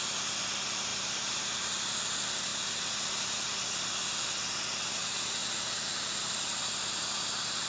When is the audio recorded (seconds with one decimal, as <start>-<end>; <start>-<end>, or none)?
0.0-0.9; 2.0-5.4; 6.3-7.7